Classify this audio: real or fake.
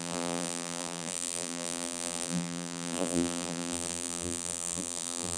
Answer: fake